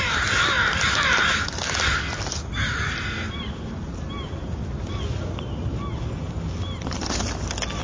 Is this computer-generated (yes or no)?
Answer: no